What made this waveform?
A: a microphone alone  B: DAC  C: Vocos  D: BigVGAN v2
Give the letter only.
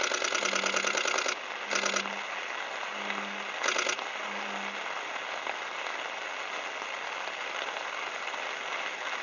A